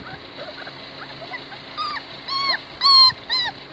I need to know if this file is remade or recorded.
recorded